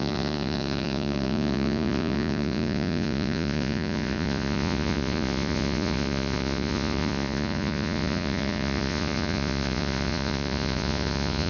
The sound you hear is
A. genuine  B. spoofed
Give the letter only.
B